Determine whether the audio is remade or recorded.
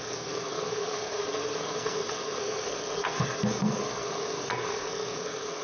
remade